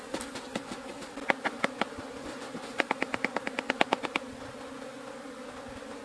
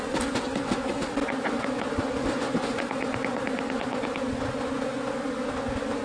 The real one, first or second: second